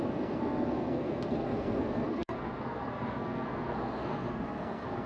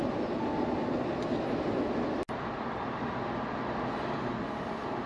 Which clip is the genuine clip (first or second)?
second